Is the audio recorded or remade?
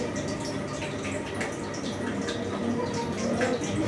recorded